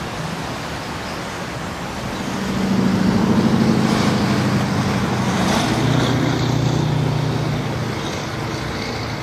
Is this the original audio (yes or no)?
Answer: yes